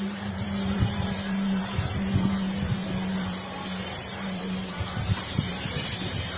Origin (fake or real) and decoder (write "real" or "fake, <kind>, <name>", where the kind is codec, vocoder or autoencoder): fake, vocoder, BigVGAN v2